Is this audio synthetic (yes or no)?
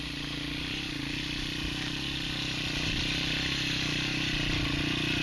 no